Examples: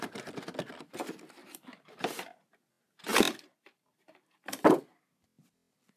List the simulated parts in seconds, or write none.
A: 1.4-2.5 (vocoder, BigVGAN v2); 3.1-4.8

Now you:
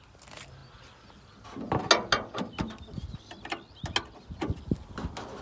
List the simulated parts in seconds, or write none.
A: none

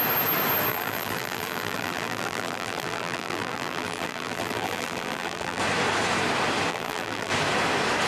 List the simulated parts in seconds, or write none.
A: 0.7-5.6 (vocoder, BigVGAN v2); 6.7-7.3

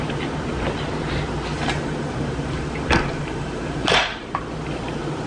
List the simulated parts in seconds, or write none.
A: 1.5-4.4 (vocoder, BigVGAN v2)

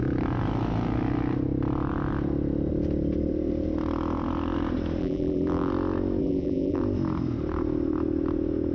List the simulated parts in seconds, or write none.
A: 5.0-5.7 (vocoder, BigVGAN v2); 6.2-6.8

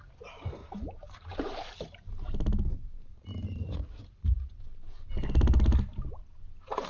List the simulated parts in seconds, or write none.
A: 0.6-4.6 (vocoder, BigVGAN v2)

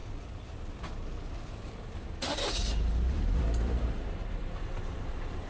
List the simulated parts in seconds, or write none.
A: 1.7-5.5 (vocoder, BigVGAN v2)

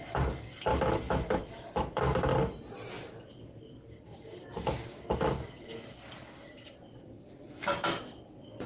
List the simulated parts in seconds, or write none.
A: 0.7-1.4 (vocoder, BigVGAN v2)